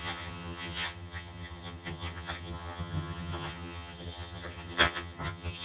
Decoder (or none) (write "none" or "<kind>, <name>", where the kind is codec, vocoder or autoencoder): vocoder, HiFi-GAN